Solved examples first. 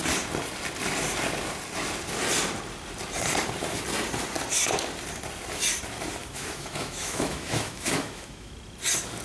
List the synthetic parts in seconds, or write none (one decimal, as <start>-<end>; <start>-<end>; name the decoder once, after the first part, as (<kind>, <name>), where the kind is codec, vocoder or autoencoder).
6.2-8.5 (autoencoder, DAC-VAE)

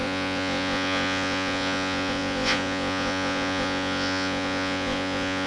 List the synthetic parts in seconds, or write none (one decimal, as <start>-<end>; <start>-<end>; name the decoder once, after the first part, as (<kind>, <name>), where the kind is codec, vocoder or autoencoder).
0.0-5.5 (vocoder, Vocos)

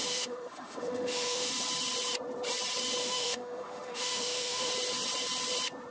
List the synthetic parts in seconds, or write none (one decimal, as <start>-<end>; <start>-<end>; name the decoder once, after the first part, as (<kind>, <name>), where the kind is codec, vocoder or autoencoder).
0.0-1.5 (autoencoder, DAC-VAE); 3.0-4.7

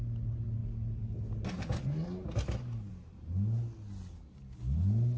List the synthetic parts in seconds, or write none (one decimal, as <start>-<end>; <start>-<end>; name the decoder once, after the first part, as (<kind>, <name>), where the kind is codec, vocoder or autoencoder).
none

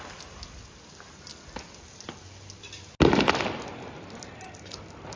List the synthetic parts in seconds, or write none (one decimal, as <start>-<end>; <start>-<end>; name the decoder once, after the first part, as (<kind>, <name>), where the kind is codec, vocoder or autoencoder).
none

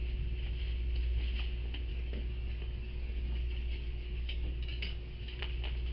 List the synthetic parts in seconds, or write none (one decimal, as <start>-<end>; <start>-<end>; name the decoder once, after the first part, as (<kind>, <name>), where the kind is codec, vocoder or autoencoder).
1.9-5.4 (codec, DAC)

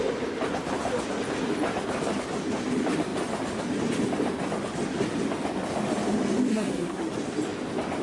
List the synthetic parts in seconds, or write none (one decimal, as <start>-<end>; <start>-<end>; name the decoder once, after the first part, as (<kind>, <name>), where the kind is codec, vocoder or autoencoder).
6.5-7.0 (codec, SNAC)